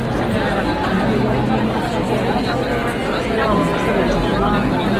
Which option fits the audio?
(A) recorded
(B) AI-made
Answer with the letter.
A